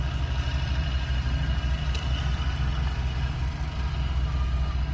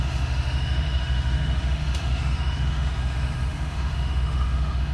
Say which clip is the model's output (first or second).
second